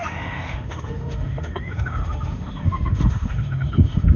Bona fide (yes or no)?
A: no